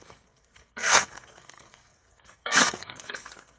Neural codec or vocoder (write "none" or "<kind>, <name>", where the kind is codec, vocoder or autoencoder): codec, SNAC